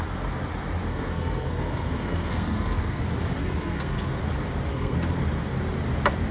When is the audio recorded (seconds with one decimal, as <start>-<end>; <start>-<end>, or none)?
0.0-0.9; 3.0-3.4; 4.2-4.7; 5.2-6.3

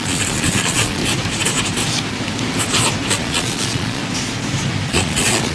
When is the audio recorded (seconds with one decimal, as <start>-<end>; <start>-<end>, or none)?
1.0-3.1; 4.0-4.9